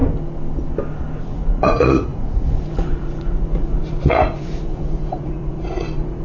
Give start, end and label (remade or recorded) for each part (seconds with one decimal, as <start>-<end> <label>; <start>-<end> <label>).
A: 0.0-1.2 recorded; 1.2-6.2 remade